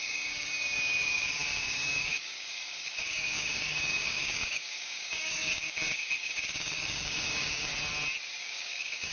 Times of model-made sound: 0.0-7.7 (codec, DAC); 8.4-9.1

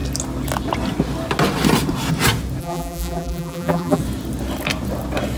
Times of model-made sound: 2.6-4.0 (vocoder, BigVGAN v2)

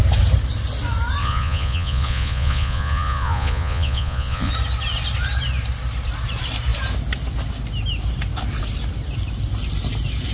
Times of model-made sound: 1.2-4.5 (vocoder, Vocos)

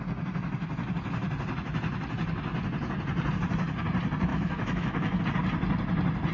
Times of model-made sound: 4.3-5.2 (autoencoder, DAC-VAE)

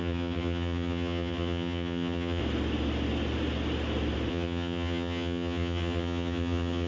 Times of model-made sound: 0.0-2.4 (vocoder, HiFi-GAN); 4.3-6.9

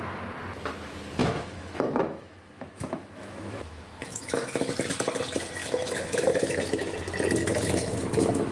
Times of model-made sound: 1.2-4.7 (autoencoder, DAC-VAE); 5.6-7.0; 7.5-8.5

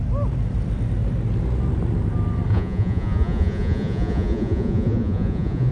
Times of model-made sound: 2.5-5.7 (vocoder, Vocos)